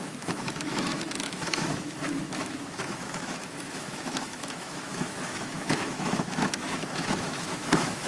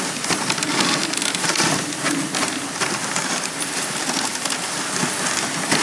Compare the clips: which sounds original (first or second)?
second